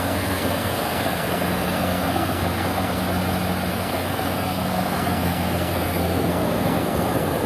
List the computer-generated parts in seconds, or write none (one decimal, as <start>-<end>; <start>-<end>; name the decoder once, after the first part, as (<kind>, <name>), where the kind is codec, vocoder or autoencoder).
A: 0.0-3.0 (codec, SNAC); 3.7-7.5